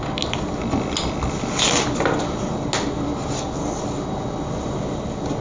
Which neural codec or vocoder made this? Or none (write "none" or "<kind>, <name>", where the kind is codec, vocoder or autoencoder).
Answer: none